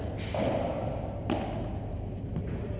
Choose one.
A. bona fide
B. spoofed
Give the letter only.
A